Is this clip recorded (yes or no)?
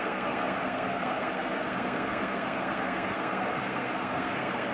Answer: no